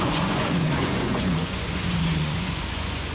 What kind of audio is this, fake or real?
fake